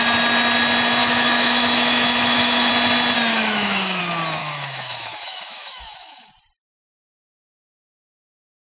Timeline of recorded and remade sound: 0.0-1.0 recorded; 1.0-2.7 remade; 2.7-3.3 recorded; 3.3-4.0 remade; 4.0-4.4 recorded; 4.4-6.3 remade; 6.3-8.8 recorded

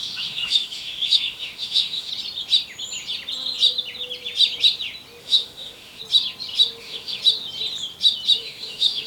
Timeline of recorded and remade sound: 0.0-2.1 remade; 2.1-5.2 recorded; 5.2-6.0 remade; 6.0-6.8 recorded; 6.8-7.2 remade; 7.2-8.4 recorded; 8.4-9.1 remade

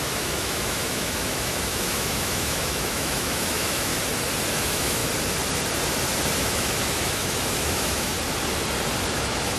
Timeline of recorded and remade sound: 0.0-3.9 remade; 3.9-4.5 recorded; 4.5-5.0 remade; 5.0-6.4 recorded; 6.4-8.1 remade; 8.1-9.1 recorded; 9.1-9.6 remade

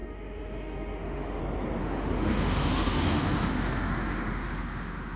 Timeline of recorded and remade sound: 0.0-1.4 remade; 1.4-1.8 recorded; 1.8-5.2 remade